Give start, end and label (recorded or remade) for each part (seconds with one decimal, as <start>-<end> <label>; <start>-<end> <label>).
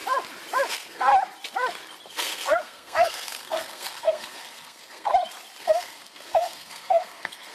0.0-0.7 recorded; 0.7-1.1 remade; 1.1-2.1 recorded; 2.1-5.1 remade; 5.1-5.6 recorded; 5.6-7.5 remade